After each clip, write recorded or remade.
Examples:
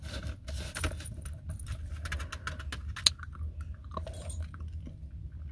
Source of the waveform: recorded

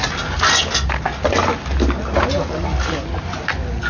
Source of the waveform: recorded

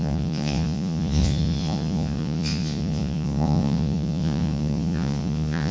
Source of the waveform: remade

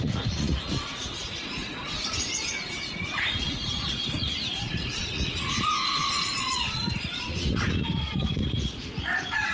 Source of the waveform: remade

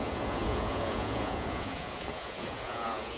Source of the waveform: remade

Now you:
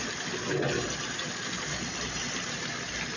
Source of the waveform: recorded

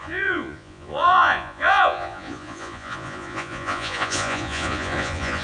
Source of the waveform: remade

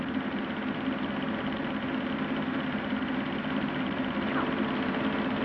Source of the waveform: recorded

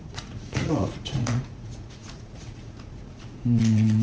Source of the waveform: remade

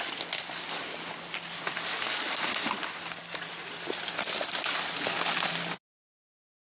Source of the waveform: recorded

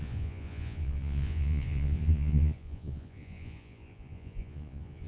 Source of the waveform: remade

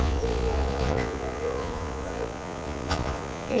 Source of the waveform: remade